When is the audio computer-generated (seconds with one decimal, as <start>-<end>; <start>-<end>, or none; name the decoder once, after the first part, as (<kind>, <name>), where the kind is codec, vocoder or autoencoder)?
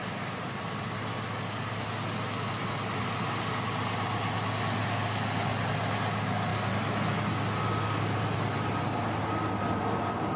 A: none